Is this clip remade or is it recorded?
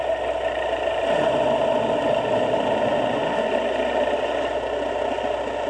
recorded